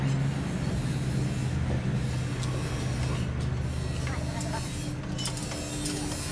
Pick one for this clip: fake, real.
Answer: real